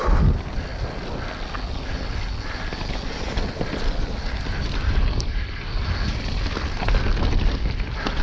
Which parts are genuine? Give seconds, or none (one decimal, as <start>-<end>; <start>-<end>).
0.0-8.2